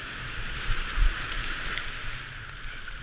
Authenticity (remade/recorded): recorded